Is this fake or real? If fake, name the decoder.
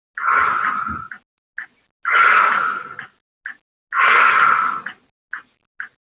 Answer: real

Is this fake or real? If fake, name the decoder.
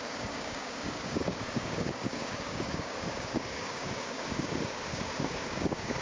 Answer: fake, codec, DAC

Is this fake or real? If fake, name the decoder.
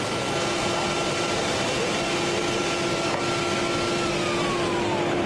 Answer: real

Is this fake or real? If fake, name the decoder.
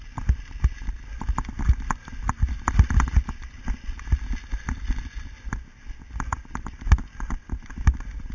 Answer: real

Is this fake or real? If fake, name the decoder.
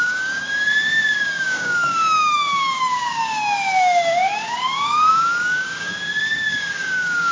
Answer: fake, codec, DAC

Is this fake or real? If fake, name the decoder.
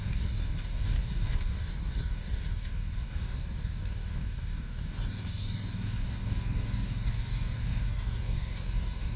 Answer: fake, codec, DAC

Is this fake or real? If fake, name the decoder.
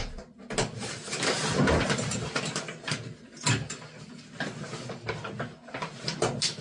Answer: real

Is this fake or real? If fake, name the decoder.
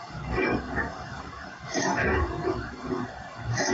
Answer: fake, codec, DAC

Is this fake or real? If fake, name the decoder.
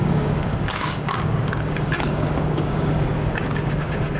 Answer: fake, codec, DAC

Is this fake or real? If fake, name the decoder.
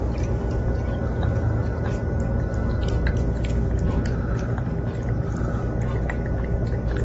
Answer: real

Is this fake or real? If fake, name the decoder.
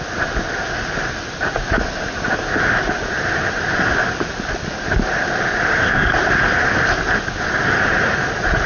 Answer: real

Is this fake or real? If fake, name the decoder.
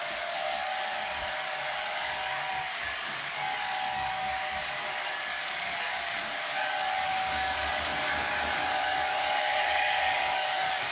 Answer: fake, codec, DAC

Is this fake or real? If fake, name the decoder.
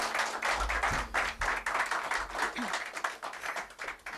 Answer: real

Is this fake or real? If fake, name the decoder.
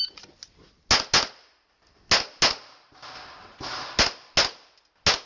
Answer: real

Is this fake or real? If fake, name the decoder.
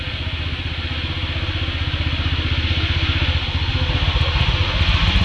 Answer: real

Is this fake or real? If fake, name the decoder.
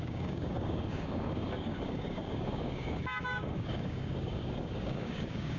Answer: fake, codec, DAC